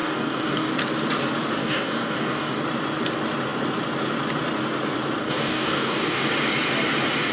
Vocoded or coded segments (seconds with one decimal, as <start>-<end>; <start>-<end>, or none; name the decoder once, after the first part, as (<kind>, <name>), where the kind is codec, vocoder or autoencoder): 0.0-0.7 (codec, DAC); 1.6-2.6; 5.2-6.3